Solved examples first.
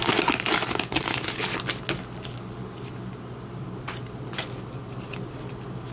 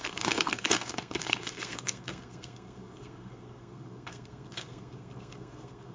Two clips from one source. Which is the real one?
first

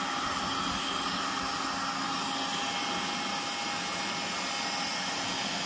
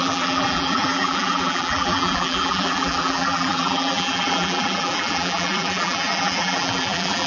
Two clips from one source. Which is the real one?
first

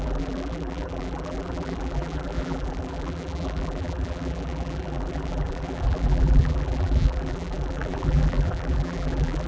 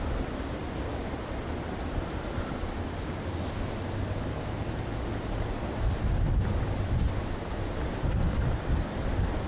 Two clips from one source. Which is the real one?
second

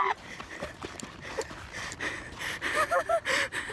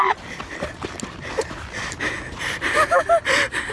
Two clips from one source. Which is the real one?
second